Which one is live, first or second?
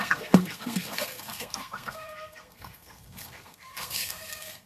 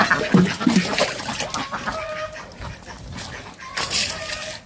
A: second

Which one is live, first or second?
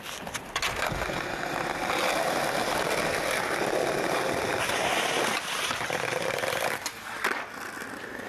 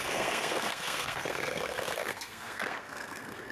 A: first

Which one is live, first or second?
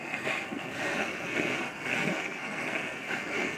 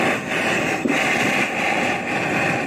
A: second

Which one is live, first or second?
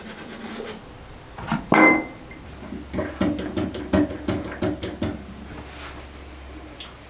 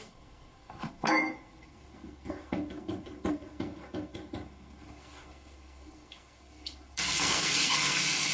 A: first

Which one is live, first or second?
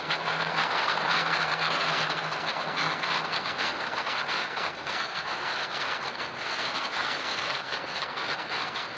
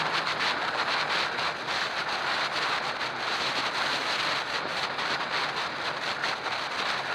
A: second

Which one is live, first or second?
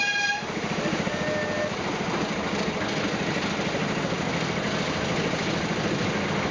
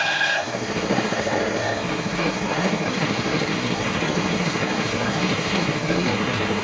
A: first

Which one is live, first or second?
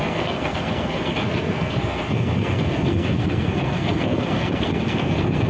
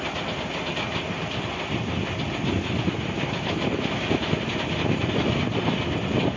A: second